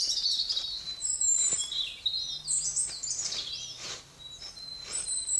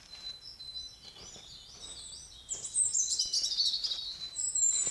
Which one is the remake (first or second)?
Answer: first